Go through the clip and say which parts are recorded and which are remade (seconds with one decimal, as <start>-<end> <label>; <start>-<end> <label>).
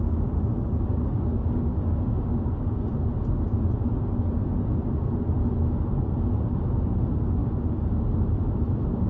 0.0-1.3 recorded; 1.3-3.1 remade; 3.1-9.1 recorded